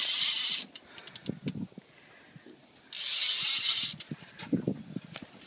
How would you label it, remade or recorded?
recorded